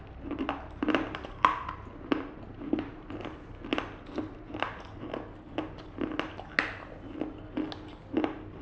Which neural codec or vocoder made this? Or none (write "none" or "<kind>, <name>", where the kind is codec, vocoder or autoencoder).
none